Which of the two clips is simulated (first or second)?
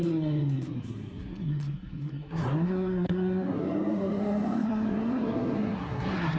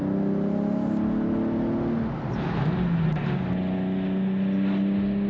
first